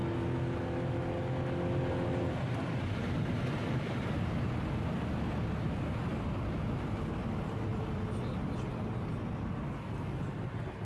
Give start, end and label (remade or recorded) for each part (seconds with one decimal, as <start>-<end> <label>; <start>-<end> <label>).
0.0-10.8 recorded